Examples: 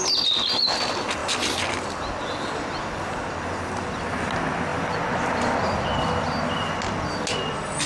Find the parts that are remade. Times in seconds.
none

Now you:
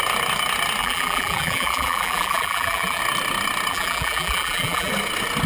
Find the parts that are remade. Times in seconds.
0.8-3.0 (vocoder, BigVGAN v2); 3.7-4.9

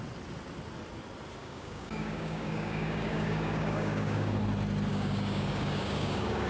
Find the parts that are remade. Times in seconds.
1.4-4.4 (codec, DAC); 4.9-6.5

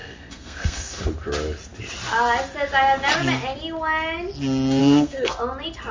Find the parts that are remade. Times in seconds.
0.0-1.0 (codec, SNAC); 4.8-5.4

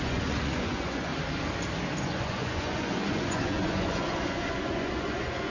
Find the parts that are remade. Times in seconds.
0.0-1.1 (vocoder, Vocos); 2.0-5.5

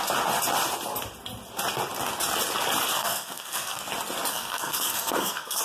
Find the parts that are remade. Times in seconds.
2.9-3.9 (codec, SNAC); 4.3-5.6

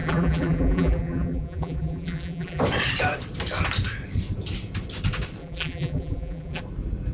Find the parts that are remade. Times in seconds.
0.0-2.6 (vocoder, BigVGAN v2); 5.4-6.6

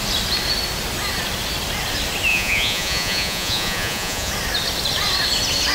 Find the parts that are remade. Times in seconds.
2.3-4.3 (vocoder, Vocos)